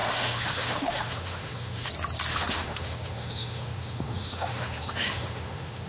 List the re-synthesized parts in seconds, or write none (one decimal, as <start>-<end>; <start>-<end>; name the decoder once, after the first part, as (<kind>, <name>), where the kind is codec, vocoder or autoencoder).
0.0-1.9 (autoencoder, DAC-VAE); 2.3-5.9